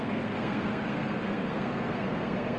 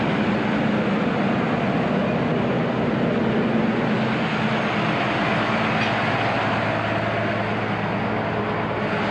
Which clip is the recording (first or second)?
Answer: second